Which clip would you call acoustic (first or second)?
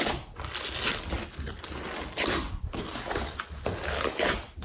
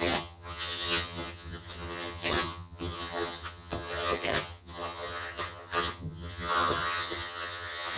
first